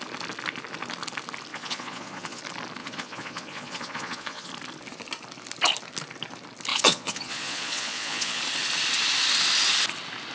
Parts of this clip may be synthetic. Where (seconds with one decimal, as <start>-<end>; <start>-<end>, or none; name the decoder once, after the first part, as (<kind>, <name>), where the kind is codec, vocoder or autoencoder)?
1.5-2.4 (vocoder, Vocos); 2.8-4.5; 6.7-8.4